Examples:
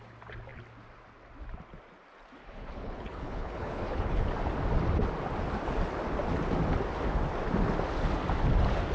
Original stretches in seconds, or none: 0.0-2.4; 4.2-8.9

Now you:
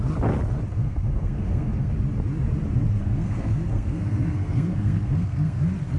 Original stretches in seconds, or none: 0.0-0.7; 1.9-3.0; 5.6-6.0

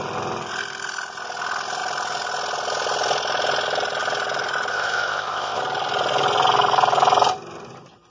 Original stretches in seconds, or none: 0.0-4.7; 5.6-8.1

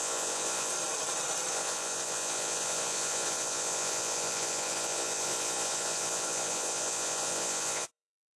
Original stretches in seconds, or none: 0.7-1.5

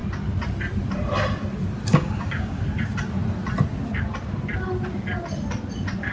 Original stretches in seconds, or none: 0.0-1.9; 2.6-6.1